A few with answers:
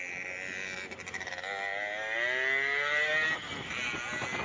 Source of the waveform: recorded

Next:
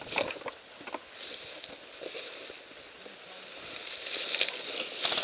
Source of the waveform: recorded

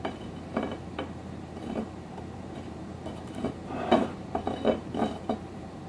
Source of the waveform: remade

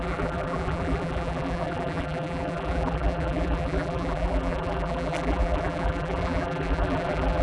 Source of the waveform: remade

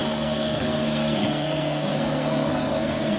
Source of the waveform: remade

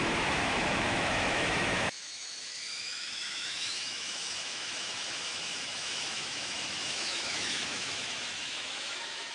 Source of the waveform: remade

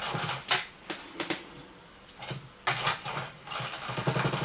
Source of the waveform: recorded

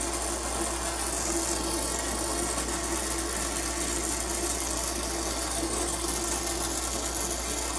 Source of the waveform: recorded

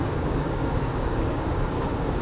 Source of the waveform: remade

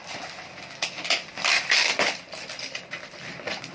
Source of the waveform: remade